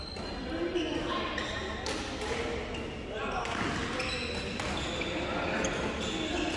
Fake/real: real